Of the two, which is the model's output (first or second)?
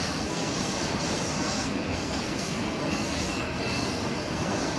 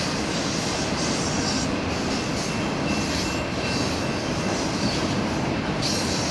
first